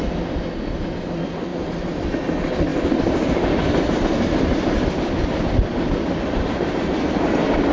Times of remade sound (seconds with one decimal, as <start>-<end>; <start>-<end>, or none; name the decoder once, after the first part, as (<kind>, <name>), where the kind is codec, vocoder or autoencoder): 1.5-2.1 (vocoder, BigVGAN v2)